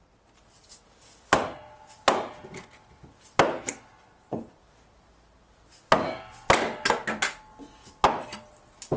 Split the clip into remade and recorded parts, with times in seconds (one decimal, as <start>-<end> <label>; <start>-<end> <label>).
0.0-0.7 recorded; 0.7-1.4 remade; 1.4-9.0 recorded